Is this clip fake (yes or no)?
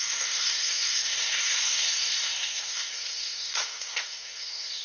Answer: yes